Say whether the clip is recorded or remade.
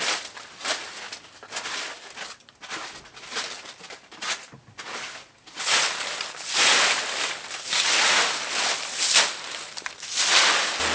recorded